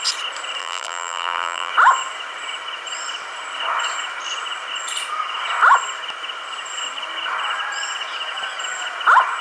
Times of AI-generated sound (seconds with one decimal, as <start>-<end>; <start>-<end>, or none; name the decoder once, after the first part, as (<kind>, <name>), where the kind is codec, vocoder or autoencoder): 0.6-1.7 (vocoder, BigVGAN v2)